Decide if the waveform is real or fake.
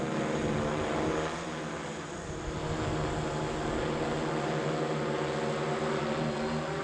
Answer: real